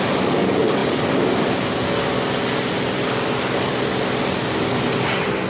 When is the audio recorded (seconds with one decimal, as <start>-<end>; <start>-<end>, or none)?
0.0-5.5

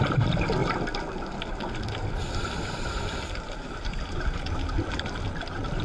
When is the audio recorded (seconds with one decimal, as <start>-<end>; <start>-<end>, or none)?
0.6-2.2

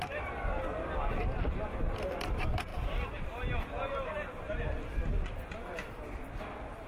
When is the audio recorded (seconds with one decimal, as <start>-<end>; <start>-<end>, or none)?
0.0-6.9

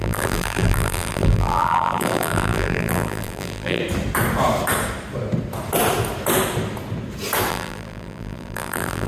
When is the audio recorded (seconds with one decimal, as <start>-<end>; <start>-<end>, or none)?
3.8-7.5

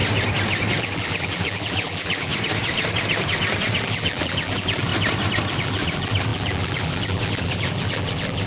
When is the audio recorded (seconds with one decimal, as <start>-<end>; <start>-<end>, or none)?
0.0-0.8; 2.3-3.8; 4.9-5.5

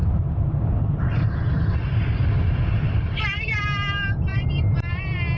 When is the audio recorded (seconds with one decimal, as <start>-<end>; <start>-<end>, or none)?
3.2-4.3; 5.0-5.4